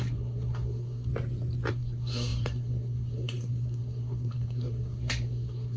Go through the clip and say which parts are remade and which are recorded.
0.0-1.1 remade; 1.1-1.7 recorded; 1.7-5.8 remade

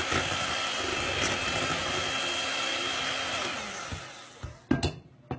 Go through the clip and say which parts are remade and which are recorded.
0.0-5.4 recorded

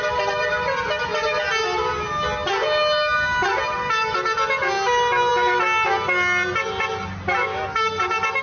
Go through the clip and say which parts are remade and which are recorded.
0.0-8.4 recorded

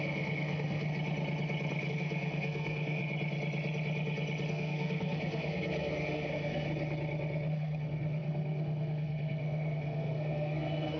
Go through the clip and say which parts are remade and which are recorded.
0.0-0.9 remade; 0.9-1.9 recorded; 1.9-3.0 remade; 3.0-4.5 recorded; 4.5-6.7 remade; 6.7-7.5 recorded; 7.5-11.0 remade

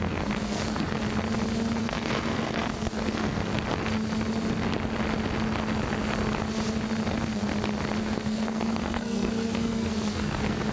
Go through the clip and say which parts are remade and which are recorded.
0.0-1.0 remade; 1.0-1.8 recorded; 1.8-3.5 remade; 3.5-7.1 recorded; 7.1-7.5 remade; 7.5-8.0 recorded; 8.0-10.7 remade

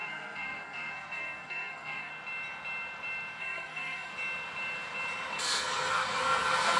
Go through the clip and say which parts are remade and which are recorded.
0.0-2.1 remade; 2.1-3.4 recorded; 3.4-4.1 remade; 4.1-5.4 recorded; 5.4-6.8 remade

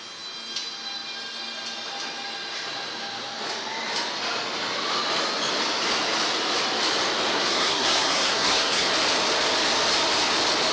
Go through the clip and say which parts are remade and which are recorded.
0.0-7.3 recorded; 7.3-8.9 remade; 8.9-10.7 recorded